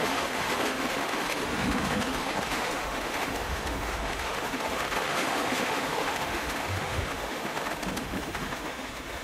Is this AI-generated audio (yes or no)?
yes